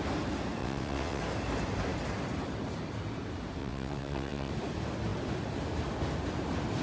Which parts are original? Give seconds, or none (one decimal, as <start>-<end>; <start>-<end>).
0.0-0.6; 1.2-3.6; 4.5-6.8